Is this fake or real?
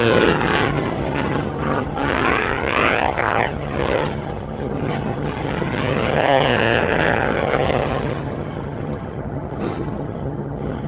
fake